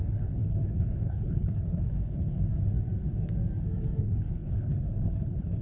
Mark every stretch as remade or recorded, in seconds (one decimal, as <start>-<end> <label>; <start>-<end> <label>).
0.0-2.5 remade; 2.5-4.0 recorded; 4.0-5.6 remade